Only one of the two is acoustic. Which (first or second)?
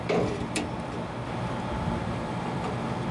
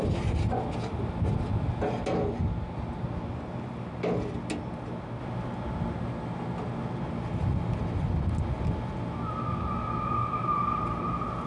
second